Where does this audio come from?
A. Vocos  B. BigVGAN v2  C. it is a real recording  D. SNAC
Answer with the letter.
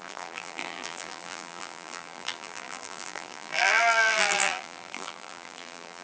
B